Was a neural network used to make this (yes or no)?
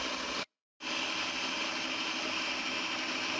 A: no